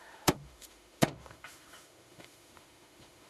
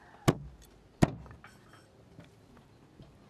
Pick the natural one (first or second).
second